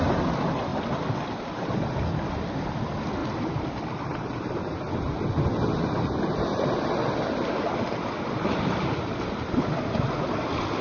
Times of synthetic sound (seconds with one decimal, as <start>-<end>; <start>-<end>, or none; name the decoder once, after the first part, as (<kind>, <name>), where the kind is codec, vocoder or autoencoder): 0.7-2.8 (vocoder, BigVGAN v2); 3.2-4.6